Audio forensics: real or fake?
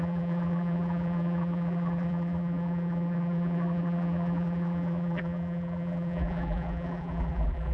fake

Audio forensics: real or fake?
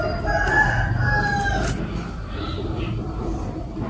real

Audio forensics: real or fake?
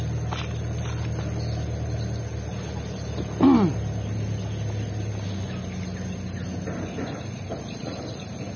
real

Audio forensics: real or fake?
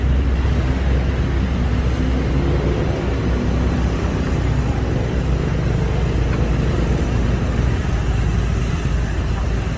real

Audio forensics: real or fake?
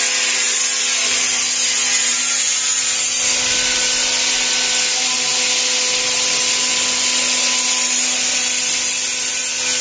real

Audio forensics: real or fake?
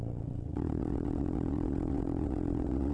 fake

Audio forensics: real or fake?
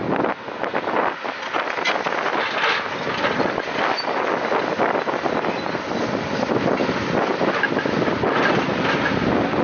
real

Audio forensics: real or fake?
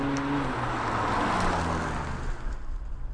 real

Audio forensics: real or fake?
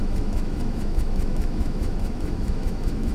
fake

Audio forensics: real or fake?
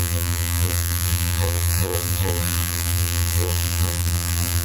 fake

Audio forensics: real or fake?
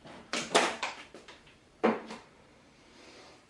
fake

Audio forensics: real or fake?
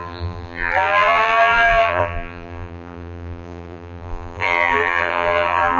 fake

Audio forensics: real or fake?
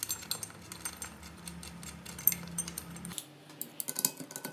real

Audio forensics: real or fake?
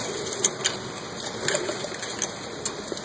real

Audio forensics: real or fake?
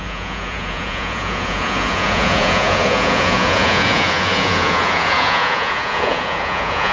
fake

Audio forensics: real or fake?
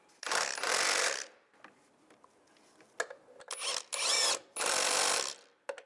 real